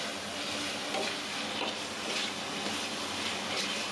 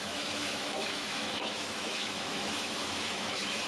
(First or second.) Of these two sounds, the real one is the first